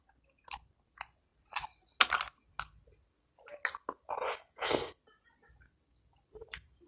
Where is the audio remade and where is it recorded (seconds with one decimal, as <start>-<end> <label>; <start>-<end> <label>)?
0.0-6.9 recorded